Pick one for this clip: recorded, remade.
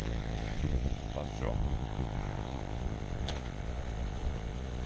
remade